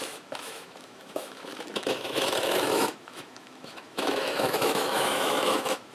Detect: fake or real fake